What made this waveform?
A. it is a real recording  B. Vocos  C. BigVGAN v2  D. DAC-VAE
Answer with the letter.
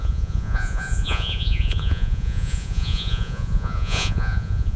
B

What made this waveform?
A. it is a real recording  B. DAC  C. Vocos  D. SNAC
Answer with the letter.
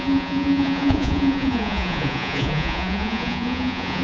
C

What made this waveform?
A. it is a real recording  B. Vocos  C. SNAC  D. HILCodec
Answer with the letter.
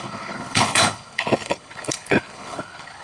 D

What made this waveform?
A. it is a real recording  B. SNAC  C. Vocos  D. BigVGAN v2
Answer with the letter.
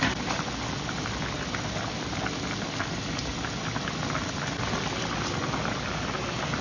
A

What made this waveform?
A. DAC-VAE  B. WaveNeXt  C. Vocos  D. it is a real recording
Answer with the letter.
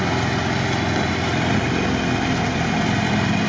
D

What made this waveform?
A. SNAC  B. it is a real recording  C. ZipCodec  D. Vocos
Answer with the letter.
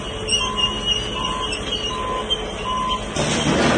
B